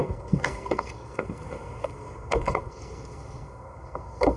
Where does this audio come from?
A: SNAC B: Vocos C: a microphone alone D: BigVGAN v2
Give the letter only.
A